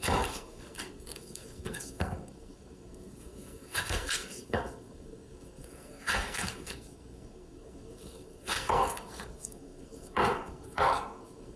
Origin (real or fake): fake